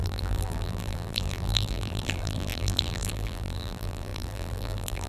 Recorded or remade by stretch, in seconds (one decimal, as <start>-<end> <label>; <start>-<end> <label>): 0.0-5.1 remade